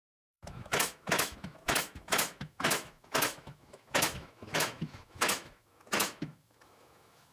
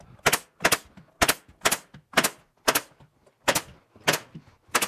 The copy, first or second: first